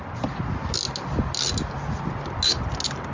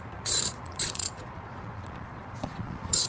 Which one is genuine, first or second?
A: first